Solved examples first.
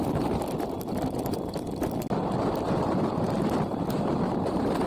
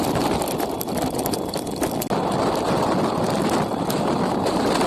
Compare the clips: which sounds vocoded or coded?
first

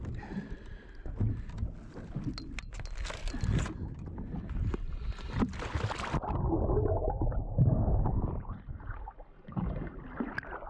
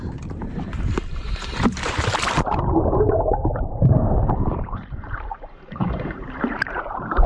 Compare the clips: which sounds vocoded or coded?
second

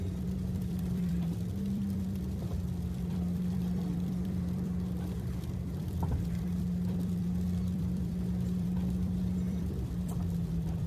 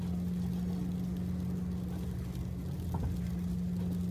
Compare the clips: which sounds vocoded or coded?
first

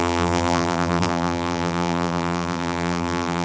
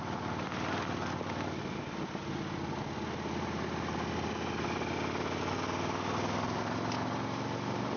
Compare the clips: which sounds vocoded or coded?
first